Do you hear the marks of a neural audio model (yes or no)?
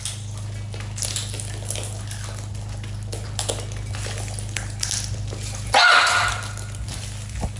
no